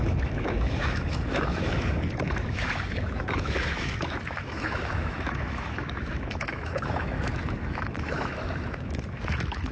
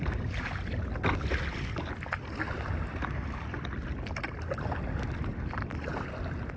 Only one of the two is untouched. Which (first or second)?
second